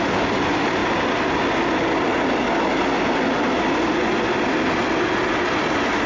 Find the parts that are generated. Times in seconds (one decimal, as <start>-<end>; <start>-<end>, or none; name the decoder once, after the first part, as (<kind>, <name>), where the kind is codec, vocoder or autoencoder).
none